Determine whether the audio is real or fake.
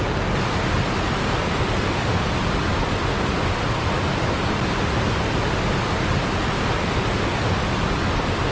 real